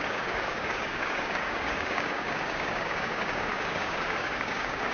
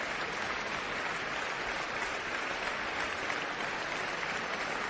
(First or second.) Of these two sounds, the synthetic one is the first